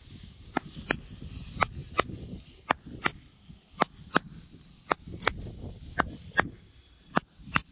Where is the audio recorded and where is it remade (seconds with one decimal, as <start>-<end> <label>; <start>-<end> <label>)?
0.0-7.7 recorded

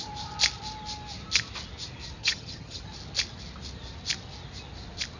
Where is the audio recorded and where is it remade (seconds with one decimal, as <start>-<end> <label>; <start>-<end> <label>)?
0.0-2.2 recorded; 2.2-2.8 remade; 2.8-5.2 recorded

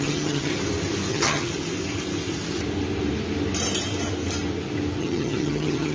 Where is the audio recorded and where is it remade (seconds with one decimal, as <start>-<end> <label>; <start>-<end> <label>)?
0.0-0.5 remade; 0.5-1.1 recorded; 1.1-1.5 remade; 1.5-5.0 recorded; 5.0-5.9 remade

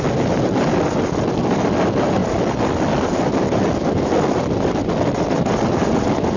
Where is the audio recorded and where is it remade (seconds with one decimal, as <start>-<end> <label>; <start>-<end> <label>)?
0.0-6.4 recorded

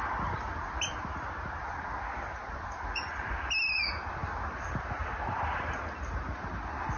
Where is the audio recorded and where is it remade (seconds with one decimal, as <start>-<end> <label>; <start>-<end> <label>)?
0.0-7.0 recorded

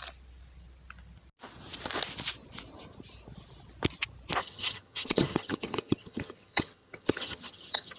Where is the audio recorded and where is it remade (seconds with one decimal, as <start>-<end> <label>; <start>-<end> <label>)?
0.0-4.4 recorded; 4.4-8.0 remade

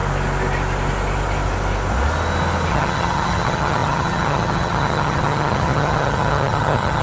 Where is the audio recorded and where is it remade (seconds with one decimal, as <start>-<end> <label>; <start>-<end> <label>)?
0.0-2.7 recorded; 2.7-7.0 remade

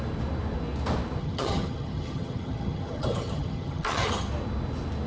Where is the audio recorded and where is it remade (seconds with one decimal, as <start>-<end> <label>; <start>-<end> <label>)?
0.0-1.2 recorded; 1.2-4.3 remade; 4.3-5.1 recorded